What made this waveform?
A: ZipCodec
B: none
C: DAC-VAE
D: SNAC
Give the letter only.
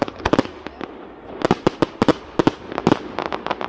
B